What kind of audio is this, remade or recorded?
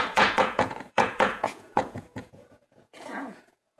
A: remade